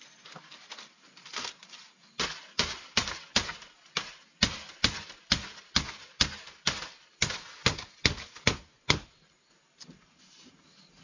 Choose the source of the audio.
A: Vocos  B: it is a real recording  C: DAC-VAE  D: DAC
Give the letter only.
B